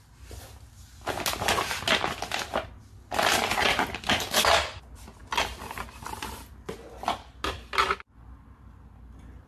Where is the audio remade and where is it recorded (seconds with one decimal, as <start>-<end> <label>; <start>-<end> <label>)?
0.0-9.5 recorded